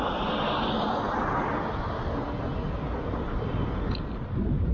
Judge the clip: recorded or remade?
recorded